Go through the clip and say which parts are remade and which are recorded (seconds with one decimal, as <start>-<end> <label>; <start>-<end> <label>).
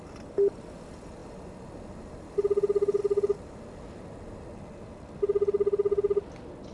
0.0-6.7 recorded